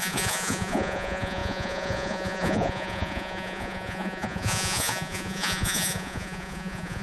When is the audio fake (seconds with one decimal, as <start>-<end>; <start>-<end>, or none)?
0.0-7.0